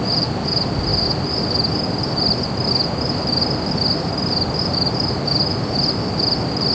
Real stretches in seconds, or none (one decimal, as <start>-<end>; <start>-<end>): 0.0-6.7